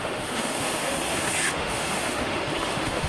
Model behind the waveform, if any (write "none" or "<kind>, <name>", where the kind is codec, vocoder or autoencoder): autoencoder, DAC-VAE